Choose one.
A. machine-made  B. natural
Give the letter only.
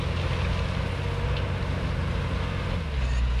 B